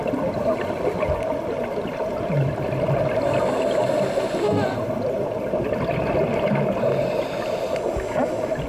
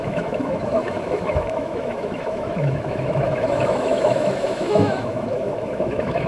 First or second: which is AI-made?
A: second